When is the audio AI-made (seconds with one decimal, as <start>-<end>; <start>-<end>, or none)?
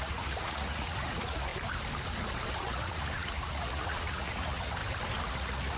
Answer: 0.0-1.5; 2.5-4.8; 5.3-5.8